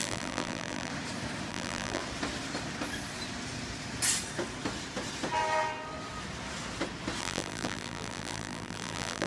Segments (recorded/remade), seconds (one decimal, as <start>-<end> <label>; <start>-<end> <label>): 0.0-0.9 remade; 0.9-1.5 recorded; 1.5-2.0 remade; 2.0-7.2 recorded; 7.2-9.3 remade

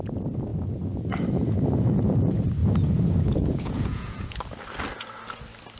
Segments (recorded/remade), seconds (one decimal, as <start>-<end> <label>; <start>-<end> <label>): 0.0-2.6 recorded; 2.6-4.4 remade; 4.4-5.8 recorded

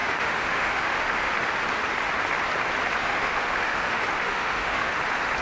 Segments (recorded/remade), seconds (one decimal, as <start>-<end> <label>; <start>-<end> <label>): 0.0-1.3 remade; 1.3-3.0 recorded; 3.0-4.9 remade; 4.9-5.4 recorded

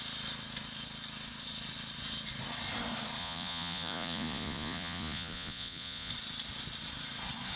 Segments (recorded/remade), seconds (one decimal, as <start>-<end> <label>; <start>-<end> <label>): 0.0-3.2 recorded; 3.2-6.1 remade; 6.1-7.6 recorded

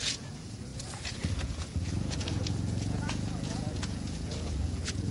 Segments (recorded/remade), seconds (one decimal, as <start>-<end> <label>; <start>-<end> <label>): 0.0-5.1 remade

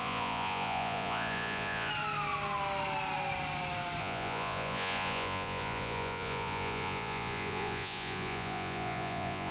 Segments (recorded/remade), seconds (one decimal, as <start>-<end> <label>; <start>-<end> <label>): 0.0-1.9 remade; 1.9-4.0 recorded; 4.0-9.5 remade

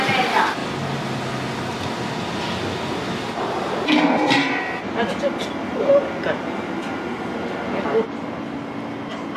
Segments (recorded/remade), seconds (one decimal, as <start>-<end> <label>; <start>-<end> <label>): 0.0-9.4 recorded